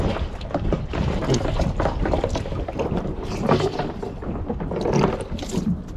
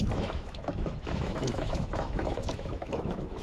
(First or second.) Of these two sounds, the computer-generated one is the second